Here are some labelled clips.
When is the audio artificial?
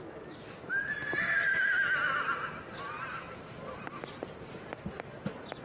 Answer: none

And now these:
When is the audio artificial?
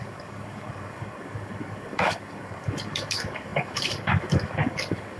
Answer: 0.0-5.2 (codec, DAC)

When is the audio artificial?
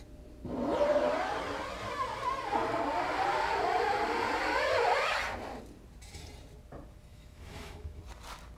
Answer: 7.1-8.0 (autoencoder, DAC-VAE)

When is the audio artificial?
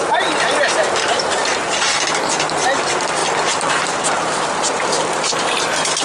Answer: 0.0-3.2 (vocoder, BigVGAN v2); 3.7-6.0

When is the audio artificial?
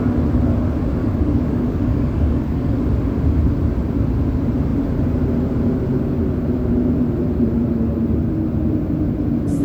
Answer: 1.0-2.8 (codec, DAC)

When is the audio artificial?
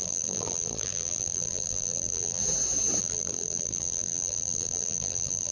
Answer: 0.0-2.4 (vocoder, BigVGAN v2); 3.0-5.5